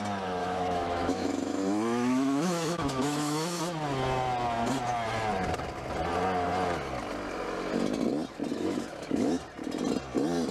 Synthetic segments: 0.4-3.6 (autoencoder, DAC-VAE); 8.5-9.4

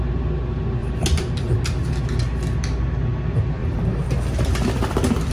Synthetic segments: 0.8-2.0 (vocoder, BigVGAN v2); 3.6-5.3

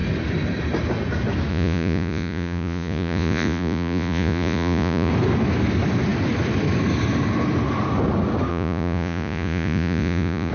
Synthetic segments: 1.5-5.1 (vocoder, Vocos); 8.5-10.5

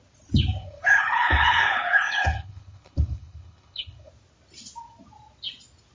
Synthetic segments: 0.6-4.1 (codec, HILCodec)